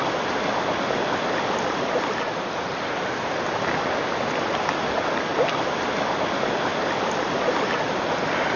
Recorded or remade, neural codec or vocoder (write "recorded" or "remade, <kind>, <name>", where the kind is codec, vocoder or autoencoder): recorded